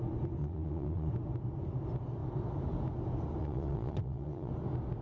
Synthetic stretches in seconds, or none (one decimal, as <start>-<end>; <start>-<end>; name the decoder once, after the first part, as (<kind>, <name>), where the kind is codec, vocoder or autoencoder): 0.4-1.1 (vocoder, Vocos); 3.4-4.5